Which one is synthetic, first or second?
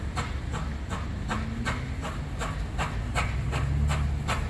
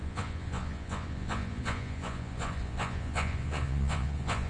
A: second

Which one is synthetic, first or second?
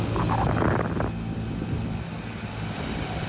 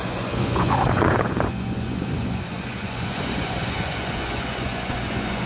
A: second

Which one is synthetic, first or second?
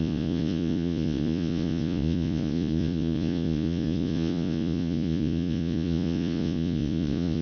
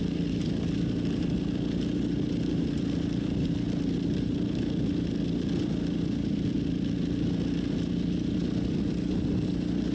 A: first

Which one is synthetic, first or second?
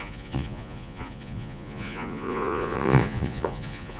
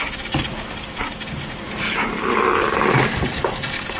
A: first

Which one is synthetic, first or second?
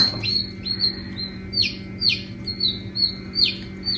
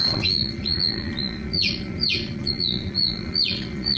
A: second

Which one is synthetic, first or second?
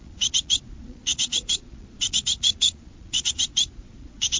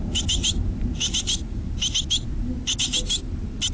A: first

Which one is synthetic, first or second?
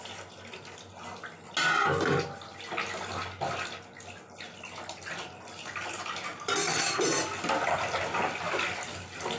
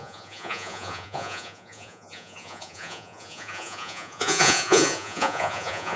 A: second